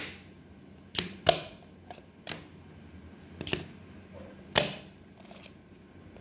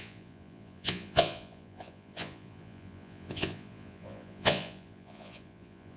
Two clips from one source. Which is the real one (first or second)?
first